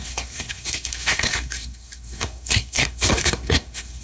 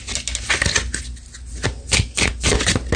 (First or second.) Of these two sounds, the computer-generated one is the first